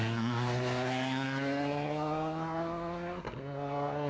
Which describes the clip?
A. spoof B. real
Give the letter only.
A